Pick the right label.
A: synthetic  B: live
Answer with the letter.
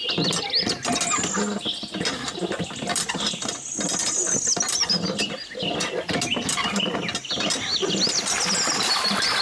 B